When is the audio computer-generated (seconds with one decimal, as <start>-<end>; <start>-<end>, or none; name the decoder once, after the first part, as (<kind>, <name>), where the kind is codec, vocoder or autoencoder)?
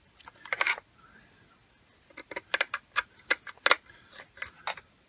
none